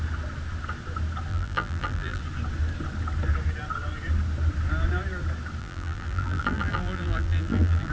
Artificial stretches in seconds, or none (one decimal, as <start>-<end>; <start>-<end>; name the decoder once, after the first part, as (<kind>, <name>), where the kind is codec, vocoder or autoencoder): 1.3-2.2 (vocoder, BigVGAN v2); 5.6-7.9